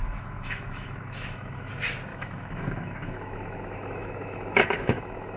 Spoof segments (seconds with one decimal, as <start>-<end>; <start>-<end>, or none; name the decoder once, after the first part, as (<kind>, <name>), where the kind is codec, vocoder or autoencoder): 0.0-1.7 (autoencoder, DAC-VAE); 2.1-5.4